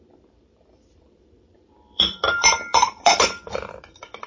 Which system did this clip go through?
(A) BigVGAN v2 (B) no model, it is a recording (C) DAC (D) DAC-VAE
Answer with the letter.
A